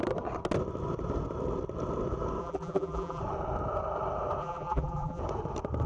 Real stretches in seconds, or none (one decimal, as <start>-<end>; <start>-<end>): 0.0-2.4; 3.2-4.4; 5.2-5.9